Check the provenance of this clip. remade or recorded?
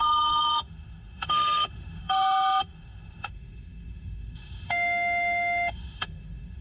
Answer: remade